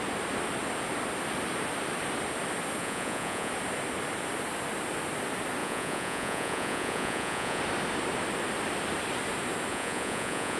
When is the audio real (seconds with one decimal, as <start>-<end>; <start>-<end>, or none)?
0.0-2.8; 3.5-5.6; 7.6-9.7